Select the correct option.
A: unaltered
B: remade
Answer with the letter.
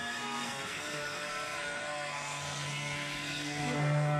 B